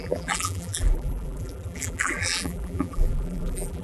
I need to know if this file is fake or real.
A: fake